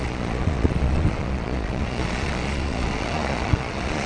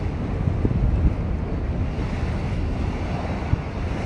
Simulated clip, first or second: first